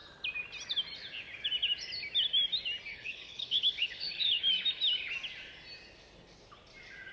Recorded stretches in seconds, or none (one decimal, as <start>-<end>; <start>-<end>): 0.0-2.9; 4.4-7.1